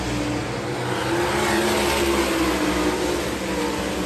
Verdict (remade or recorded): recorded